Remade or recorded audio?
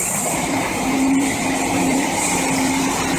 remade